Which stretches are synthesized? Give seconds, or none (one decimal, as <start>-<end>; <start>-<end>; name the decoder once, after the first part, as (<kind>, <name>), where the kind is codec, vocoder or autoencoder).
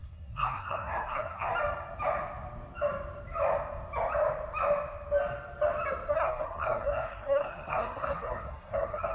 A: 0.0-1.5 (codec, SNAC); 6.1-9.1